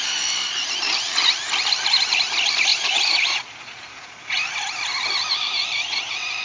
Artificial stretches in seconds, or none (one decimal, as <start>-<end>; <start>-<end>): 2.7-4.4